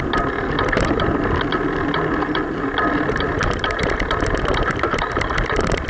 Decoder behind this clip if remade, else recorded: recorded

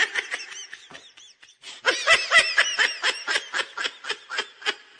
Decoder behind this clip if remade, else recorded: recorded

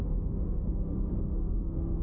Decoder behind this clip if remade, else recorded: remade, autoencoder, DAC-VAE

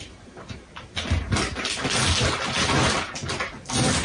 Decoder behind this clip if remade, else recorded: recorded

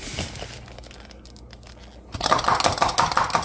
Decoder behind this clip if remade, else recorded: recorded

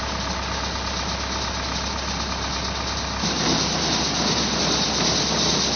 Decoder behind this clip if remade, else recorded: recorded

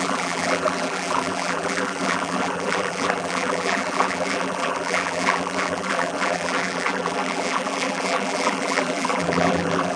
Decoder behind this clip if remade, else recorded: remade, vocoder, BigVGAN v2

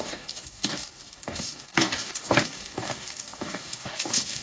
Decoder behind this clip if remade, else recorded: remade, codec, DAC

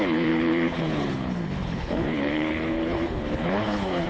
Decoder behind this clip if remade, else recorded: remade, codec, HILCodec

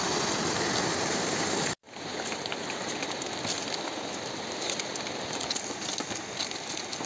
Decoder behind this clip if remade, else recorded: recorded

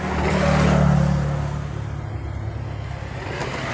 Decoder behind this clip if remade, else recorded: recorded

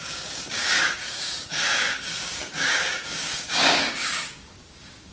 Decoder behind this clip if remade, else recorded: remade, codec, DAC